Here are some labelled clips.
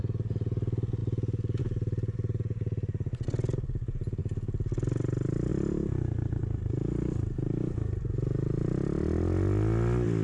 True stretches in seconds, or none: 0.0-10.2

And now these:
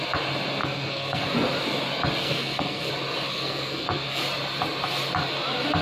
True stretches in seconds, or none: 0.0-0.6; 1.2-2.2; 2.9-3.3; 4.2-5.8